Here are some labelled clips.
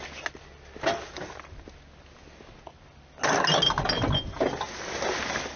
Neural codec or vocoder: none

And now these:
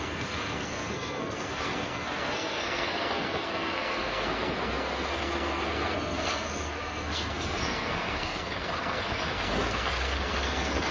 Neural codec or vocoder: codec, SNAC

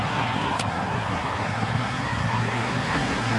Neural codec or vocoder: codec, SNAC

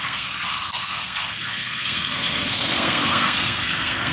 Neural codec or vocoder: codec, SNAC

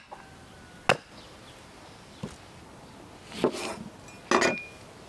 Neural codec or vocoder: none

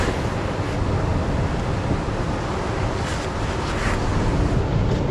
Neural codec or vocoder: none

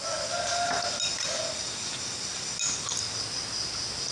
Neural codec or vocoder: none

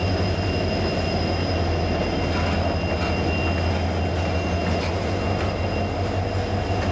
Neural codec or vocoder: none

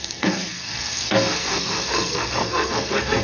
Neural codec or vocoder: codec, SNAC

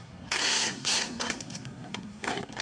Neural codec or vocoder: codec, SNAC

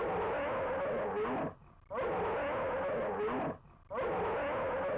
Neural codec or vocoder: none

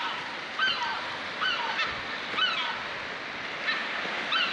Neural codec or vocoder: none